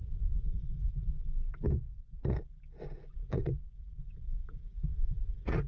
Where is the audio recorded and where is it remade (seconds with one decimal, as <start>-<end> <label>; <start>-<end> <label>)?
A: 0.0-1.1 remade; 1.1-1.9 recorded; 1.9-2.4 remade; 2.4-3.1 recorded; 3.1-5.7 remade